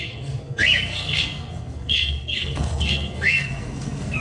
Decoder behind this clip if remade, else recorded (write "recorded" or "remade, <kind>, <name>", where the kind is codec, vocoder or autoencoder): remade, codec, SNAC